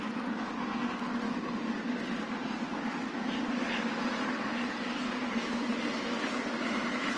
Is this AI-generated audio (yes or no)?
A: no